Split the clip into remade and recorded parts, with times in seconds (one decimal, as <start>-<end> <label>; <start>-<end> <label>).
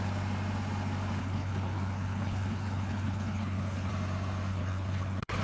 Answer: 0.0-1.2 recorded; 1.2-3.9 remade; 3.9-4.5 recorded; 4.5-5.4 remade